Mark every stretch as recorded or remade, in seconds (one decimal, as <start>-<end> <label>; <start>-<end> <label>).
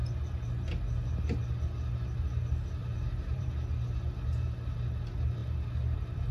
0.0-2.8 recorded; 2.8-3.5 remade; 3.5-6.3 recorded